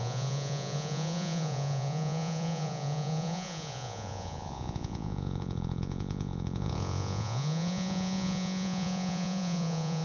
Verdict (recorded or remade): remade